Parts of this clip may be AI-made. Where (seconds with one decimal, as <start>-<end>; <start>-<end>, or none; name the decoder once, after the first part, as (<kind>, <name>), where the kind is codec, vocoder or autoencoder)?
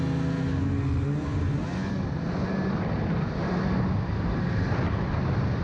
none